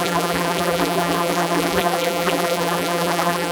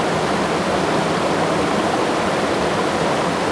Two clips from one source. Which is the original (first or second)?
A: second